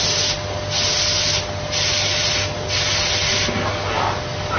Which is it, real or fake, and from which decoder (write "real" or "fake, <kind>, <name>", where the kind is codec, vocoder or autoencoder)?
real